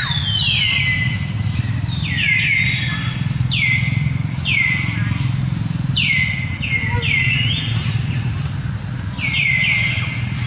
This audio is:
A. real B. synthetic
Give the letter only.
A